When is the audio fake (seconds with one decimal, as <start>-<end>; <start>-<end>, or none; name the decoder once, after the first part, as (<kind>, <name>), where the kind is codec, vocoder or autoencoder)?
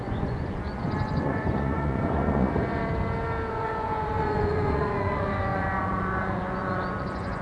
0.0-2.8 (vocoder, Vocos); 3.5-7.4